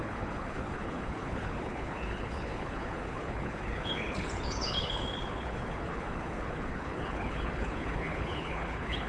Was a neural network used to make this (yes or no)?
yes